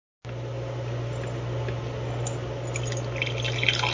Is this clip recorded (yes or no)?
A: yes